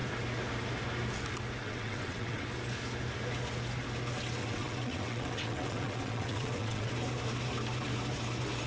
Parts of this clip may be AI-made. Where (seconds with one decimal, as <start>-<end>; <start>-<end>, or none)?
1.6-2.4; 4.4-6.9

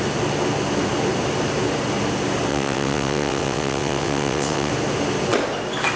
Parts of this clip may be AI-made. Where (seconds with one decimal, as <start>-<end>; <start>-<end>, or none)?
2.5-4.7

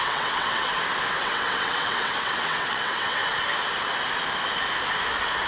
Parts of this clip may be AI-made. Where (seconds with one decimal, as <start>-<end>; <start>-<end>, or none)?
0.0-0.7; 1.2-3.2

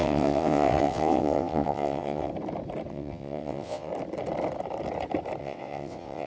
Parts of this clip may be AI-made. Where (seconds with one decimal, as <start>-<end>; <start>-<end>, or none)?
0.0-2.3; 2.9-3.9; 5.4-6.3

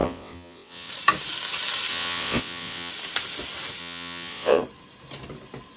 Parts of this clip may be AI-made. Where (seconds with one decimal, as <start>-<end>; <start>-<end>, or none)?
0.0-0.9; 1.9-2.9; 3.8-4.6